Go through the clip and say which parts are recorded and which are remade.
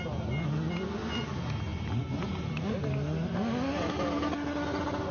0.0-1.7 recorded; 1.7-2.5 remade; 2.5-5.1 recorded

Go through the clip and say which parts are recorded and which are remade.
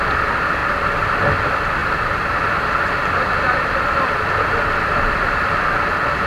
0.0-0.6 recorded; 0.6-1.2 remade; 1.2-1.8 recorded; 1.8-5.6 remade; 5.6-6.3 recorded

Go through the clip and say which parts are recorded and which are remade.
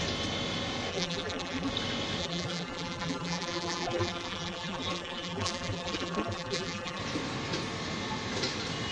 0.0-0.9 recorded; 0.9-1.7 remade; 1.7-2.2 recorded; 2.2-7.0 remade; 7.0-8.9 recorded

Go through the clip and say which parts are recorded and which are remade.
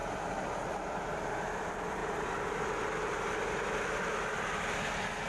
0.0-1.4 recorded; 1.4-2.0 remade; 2.0-5.3 recorded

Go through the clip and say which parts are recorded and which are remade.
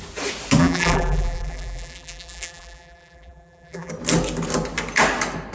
0.0-0.6 recorded; 0.6-3.9 remade; 3.9-5.5 recorded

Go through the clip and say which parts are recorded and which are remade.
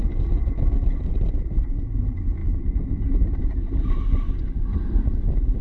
0.0-5.6 remade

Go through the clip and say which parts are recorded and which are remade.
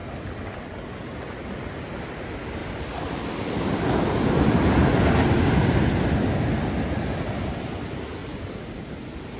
0.0-2.6 recorded; 2.6-5.6 remade; 5.6-8.2 recorded; 8.2-9.4 remade